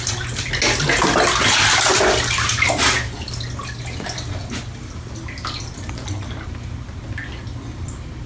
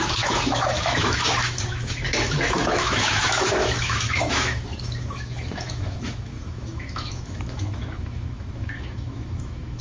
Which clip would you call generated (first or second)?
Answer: second